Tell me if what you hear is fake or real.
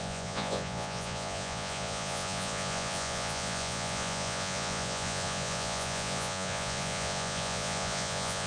fake